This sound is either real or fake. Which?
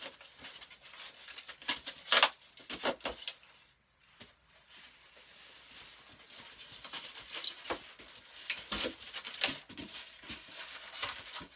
real